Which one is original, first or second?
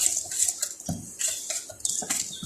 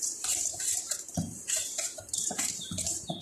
first